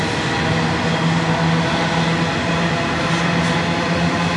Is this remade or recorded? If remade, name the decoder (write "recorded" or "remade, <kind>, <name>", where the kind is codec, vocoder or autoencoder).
recorded